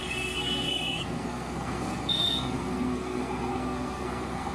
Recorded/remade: remade